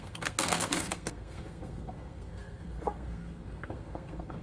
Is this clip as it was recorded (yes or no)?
no